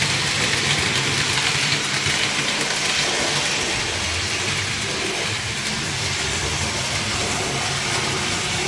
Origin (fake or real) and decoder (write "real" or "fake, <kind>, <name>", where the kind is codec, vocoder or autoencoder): fake, vocoder, BigVGAN v2